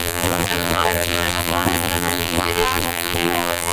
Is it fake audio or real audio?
fake